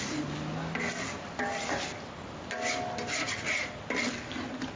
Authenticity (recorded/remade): recorded